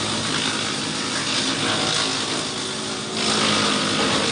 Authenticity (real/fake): real